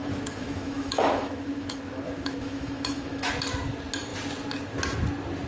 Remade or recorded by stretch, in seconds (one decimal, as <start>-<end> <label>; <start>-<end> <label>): 0.0-3.3 remade; 3.3-5.5 recorded